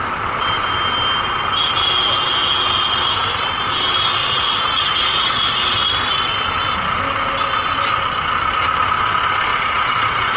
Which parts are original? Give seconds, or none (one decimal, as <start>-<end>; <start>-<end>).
0.0-4.2; 5.7-9.5